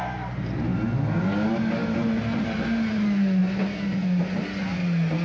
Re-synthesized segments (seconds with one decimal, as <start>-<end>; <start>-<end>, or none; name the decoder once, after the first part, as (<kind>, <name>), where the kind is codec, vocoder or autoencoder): none